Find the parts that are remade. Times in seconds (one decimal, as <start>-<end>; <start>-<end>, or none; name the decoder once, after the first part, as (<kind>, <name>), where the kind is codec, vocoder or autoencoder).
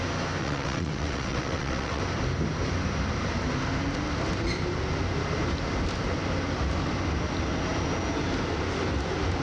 0.4-2.0 (vocoder, WaveNeXt)